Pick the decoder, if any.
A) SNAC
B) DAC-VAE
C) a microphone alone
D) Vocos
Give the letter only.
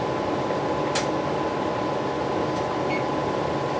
C